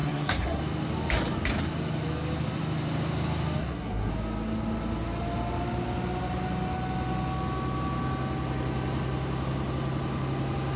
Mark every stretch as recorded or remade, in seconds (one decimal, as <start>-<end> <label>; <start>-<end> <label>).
0.0-0.6 remade; 0.6-3.6 recorded; 3.6-4.1 remade; 4.1-10.8 recorded